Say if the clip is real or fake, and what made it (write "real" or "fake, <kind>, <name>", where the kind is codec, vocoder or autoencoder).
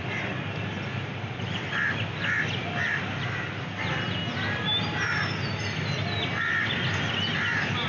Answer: real